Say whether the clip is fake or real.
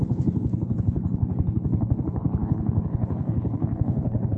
fake